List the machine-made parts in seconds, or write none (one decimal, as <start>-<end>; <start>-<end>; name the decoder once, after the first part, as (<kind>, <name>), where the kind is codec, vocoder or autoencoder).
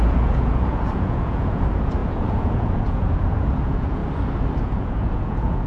0.0-4.0 (vocoder, Vocos); 4.6-5.7